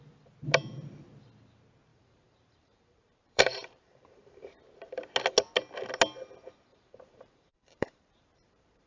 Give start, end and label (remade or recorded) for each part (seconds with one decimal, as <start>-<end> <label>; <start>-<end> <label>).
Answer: 0.0-1.9 recorded; 1.9-4.6 remade; 4.6-6.7 recorded; 6.7-8.9 remade

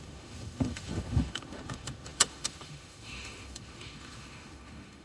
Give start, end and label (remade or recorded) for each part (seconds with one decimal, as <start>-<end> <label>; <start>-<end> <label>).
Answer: 0.0-5.0 remade